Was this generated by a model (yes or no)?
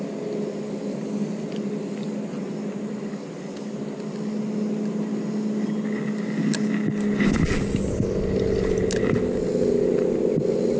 no